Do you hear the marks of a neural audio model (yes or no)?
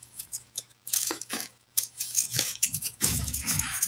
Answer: yes